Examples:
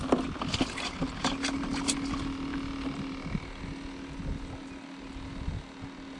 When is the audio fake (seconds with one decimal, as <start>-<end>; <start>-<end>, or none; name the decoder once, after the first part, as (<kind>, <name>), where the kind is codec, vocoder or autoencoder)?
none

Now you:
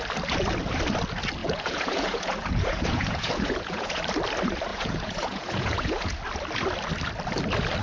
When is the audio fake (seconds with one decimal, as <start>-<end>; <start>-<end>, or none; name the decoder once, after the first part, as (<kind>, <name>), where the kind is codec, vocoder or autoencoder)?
1.4-4.0 (vocoder, Vocos); 4.7-6.2

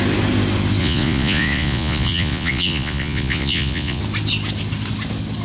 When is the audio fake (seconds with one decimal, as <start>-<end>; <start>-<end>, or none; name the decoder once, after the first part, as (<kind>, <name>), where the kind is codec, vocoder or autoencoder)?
0.8-4.0 (vocoder, Vocos)